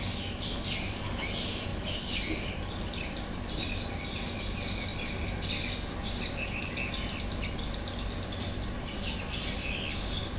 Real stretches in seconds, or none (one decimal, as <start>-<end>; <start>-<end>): 0.0-10.4